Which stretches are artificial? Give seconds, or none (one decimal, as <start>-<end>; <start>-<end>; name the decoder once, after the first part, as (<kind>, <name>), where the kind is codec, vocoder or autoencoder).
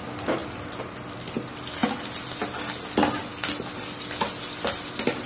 none